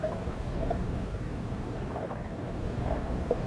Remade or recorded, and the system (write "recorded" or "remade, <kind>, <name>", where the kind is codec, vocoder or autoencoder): remade, codec, DAC